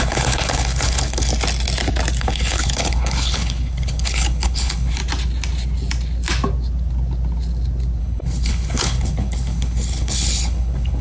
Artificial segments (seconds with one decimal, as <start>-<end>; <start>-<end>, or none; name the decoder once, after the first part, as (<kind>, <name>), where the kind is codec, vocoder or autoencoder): 0.0-1.3 (codec, HILCodec); 2.2-5.0; 8.0-11.0